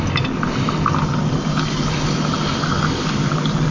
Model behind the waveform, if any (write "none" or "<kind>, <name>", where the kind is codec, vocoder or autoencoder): none